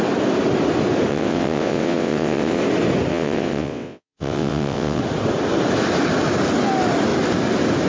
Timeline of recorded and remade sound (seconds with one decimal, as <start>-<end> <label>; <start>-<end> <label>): 0.0-1.1 recorded; 1.1-2.6 remade; 2.6-3.1 recorded; 3.1-5.0 remade; 5.0-7.9 recorded